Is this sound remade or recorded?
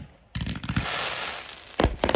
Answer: recorded